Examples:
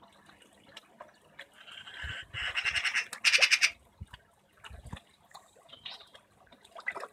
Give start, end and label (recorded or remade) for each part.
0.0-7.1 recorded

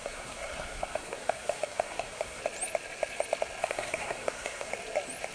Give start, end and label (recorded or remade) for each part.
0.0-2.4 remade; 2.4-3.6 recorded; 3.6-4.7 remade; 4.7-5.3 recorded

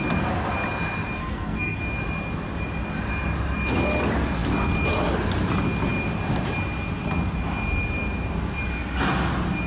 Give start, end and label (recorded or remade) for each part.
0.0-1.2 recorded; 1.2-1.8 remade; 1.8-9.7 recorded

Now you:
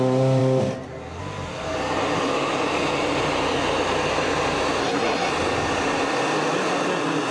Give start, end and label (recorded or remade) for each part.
0.0-4.8 recorded; 4.8-5.3 remade; 5.3-7.3 recorded

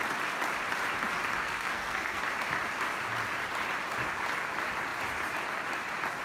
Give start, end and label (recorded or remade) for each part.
0.0-1.4 recorded; 1.4-2.2 remade; 2.2-6.2 recorded